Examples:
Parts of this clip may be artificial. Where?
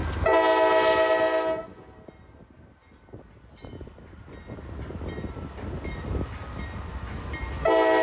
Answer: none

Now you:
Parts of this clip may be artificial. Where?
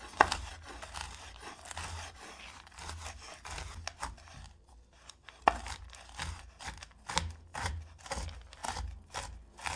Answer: 7.5-8.0 (vocoder, BigVGAN v2)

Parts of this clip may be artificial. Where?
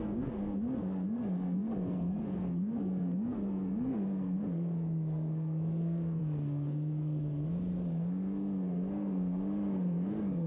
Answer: 0.0-10.5 (codec, SNAC)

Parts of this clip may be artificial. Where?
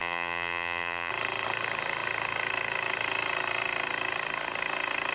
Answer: 0.0-1.1 (vocoder, BigVGAN v2)